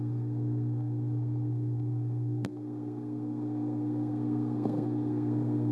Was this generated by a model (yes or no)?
yes